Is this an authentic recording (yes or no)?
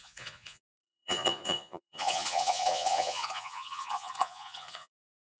no